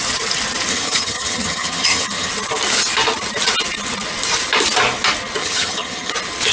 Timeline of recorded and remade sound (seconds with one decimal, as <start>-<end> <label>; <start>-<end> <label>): 0.0-0.7 recorded; 0.7-2.3 remade; 2.3-5.4 recorded; 5.4-6.1 remade; 6.1-6.5 recorded